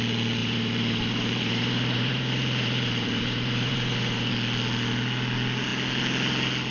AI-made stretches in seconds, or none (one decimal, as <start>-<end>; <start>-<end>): 0.4-4.3